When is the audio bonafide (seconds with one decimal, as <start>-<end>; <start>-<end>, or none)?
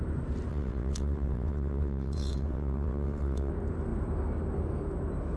0.0-0.5; 3.5-5.4